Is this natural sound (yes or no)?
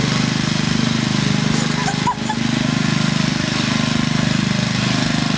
yes